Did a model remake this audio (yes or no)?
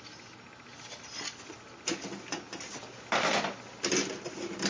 no